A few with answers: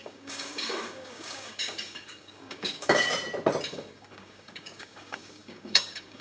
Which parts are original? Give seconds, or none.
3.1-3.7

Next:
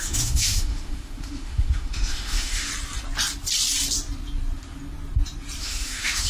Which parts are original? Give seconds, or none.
2.7-5.6

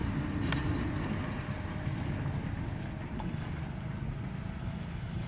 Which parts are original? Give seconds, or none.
0.0-3.2; 3.6-4.6

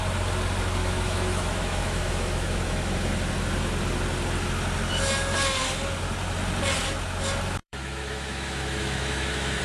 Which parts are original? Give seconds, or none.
0.0-0.8; 3.1-7.6

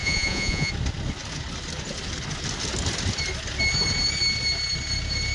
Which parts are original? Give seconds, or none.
0.7-5.3